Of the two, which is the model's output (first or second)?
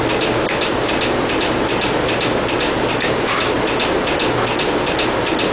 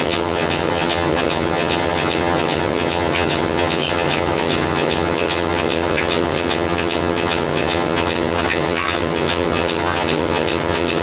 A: second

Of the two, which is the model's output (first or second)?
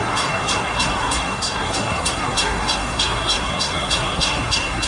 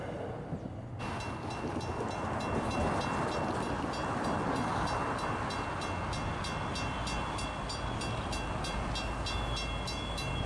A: first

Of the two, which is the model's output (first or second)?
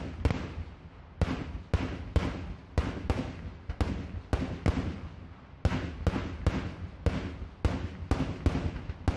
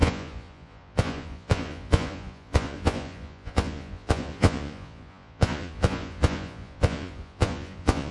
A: second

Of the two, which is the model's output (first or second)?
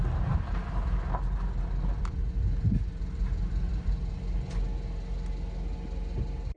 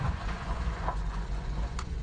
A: second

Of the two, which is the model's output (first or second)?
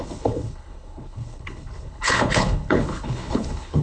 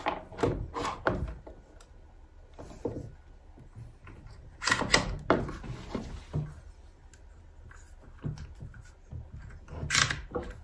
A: first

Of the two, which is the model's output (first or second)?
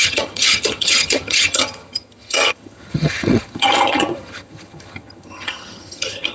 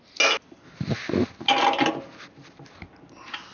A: first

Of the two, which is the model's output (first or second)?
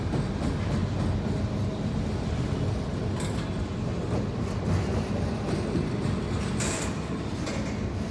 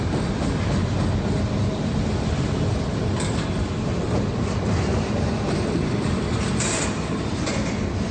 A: second